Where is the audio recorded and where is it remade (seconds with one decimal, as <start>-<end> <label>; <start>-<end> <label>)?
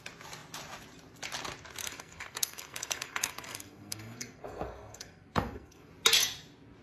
0.0-1.8 recorded; 1.8-5.9 remade; 5.9-6.8 recorded